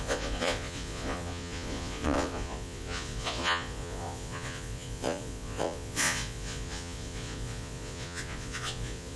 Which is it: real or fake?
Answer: fake